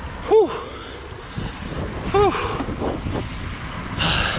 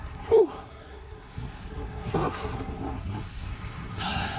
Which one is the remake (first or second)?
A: second